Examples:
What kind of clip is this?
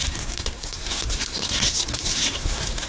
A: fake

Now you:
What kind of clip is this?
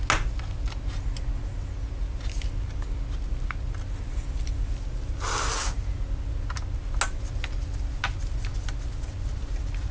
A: real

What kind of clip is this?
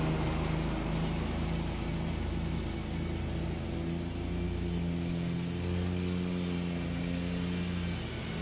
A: real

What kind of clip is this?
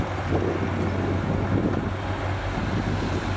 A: real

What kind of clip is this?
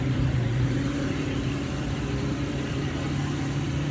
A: fake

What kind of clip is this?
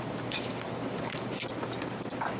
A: real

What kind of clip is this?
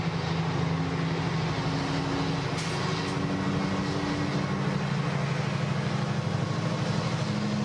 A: real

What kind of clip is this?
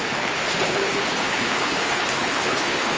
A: fake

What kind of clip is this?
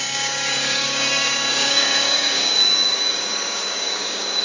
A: fake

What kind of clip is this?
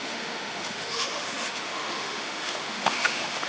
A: fake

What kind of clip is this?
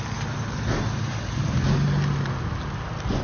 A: real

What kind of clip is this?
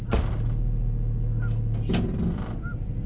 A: real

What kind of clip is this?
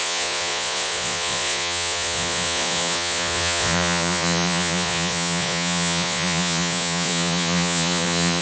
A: fake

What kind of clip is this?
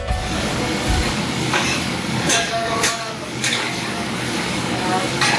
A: fake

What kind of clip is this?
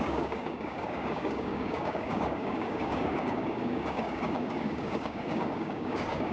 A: fake